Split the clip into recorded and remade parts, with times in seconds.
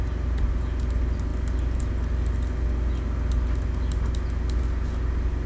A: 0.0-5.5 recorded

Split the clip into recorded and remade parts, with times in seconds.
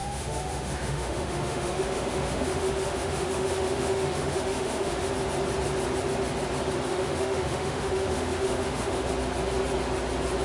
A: 0.0-5.1 remade; 5.1-6.9 recorded; 6.9-9.1 remade; 9.1-10.4 recorded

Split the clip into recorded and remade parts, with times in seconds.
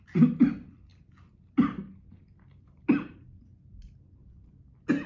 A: 0.0-5.1 recorded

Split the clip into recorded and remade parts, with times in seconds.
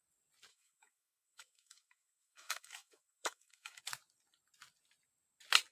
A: 0.0-0.5 recorded; 0.5-3.8 remade; 3.8-5.7 recorded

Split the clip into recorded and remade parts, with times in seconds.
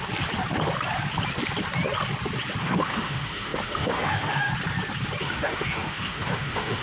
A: 0.0-2.6 recorded; 2.6-4.5 remade; 4.5-5.2 recorded; 5.2-6.8 remade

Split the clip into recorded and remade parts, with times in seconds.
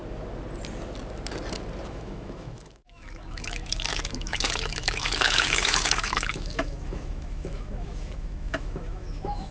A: 0.0-1.9 recorded; 1.9-9.5 remade